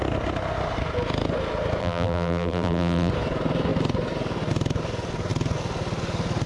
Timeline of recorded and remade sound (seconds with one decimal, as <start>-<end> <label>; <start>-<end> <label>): 0.0-1.8 recorded; 1.8-3.1 remade; 3.1-6.5 recorded